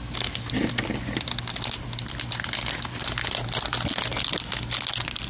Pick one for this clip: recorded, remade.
recorded